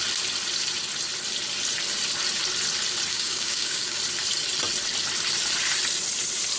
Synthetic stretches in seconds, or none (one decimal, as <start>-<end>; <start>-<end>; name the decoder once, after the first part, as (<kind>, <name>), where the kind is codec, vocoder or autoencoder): 3.1-4.0 (codec, DAC)